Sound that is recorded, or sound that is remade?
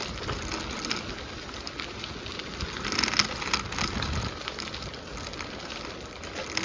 recorded